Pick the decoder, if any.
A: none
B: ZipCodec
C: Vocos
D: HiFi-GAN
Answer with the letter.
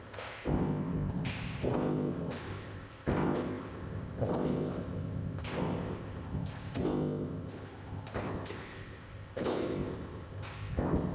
B